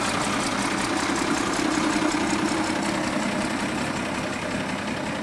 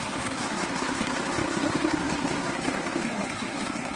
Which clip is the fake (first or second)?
second